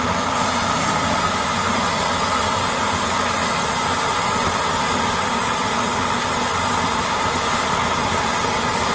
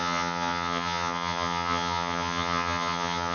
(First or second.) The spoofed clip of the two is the second